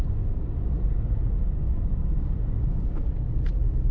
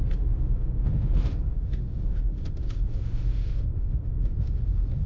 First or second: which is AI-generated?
second